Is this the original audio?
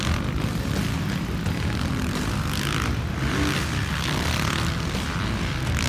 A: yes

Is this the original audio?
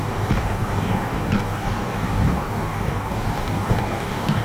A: no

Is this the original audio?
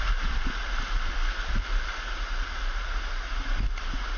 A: yes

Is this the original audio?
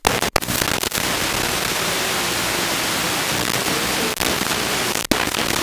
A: yes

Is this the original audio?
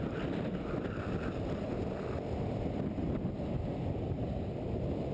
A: yes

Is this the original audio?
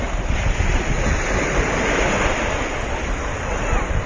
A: yes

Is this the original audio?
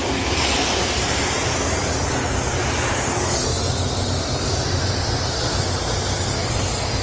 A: yes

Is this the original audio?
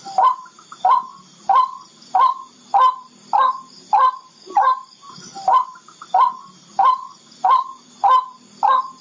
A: yes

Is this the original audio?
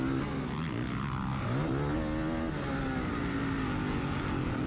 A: yes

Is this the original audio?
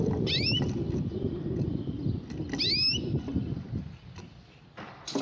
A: yes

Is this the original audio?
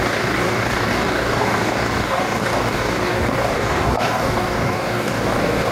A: no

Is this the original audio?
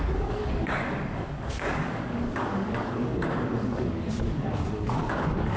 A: no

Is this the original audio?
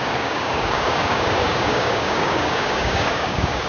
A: no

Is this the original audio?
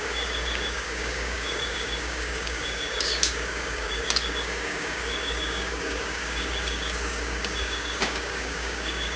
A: no